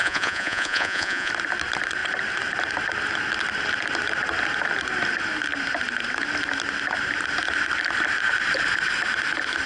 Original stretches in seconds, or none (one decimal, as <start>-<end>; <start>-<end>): 1.3-9.7